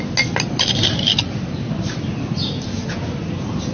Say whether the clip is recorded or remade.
recorded